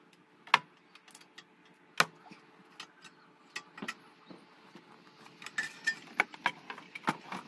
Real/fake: real